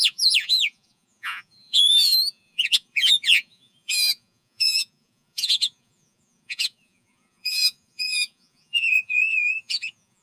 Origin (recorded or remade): remade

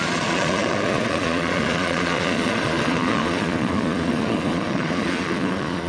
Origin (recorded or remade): remade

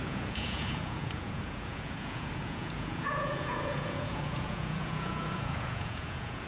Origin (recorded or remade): remade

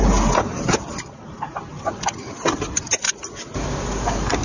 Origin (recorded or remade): recorded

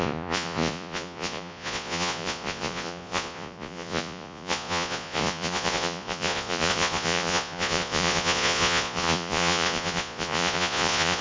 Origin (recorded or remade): remade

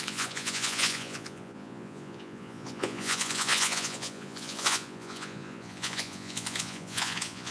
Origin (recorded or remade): remade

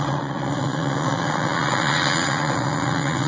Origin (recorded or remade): remade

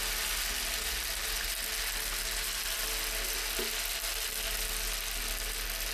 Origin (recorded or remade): recorded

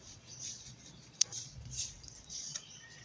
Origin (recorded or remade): remade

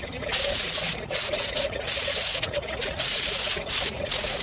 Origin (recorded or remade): remade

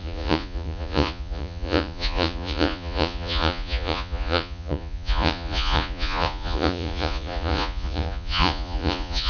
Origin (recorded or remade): remade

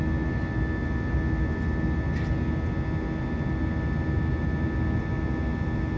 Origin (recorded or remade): recorded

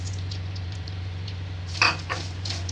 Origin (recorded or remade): remade